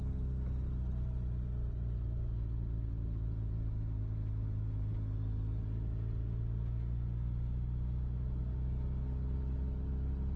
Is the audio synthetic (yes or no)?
no